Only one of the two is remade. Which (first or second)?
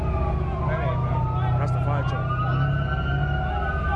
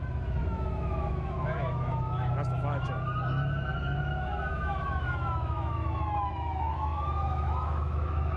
second